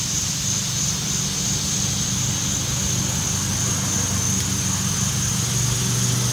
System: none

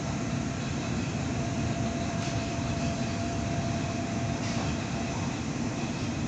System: vocoder, BigVGAN v2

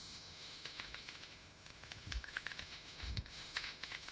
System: autoencoder, DAC-VAE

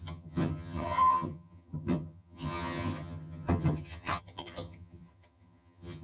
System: vocoder, HiFi-GAN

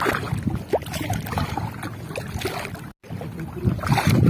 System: none